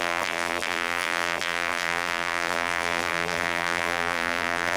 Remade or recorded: remade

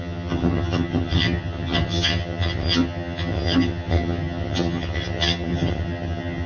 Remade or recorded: remade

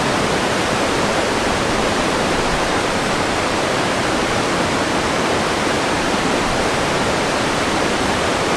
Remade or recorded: remade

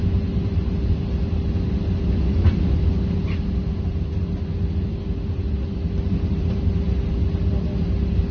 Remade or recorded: recorded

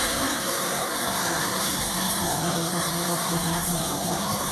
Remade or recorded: remade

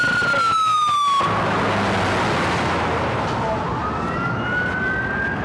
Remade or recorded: recorded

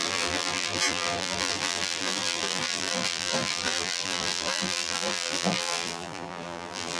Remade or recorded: remade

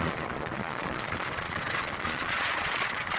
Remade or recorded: remade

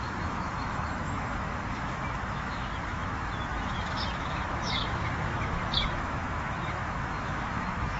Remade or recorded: remade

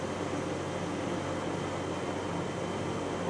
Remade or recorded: recorded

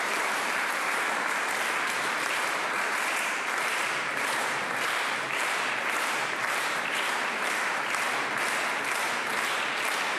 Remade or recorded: remade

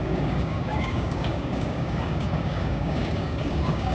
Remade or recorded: remade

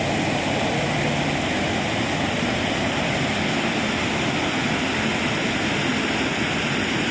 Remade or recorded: recorded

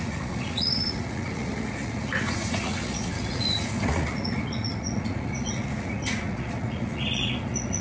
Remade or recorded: remade